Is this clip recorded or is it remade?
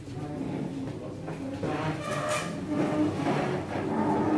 recorded